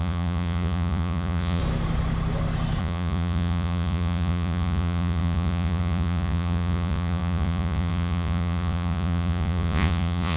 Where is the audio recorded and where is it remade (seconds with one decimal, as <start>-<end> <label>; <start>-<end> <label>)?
0.0-1.6 remade; 1.6-2.8 recorded; 2.8-10.4 remade